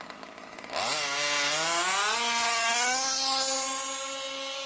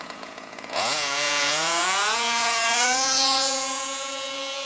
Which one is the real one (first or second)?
first